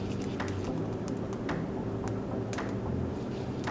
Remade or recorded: recorded